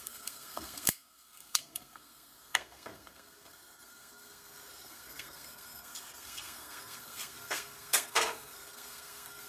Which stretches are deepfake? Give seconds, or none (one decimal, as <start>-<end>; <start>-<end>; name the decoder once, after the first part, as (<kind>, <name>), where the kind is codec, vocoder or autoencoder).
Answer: 0.0-9.5 (codec, SNAC)